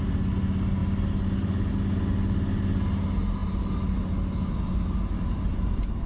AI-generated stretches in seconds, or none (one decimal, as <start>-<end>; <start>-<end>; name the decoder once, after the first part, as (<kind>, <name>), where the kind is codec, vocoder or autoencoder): none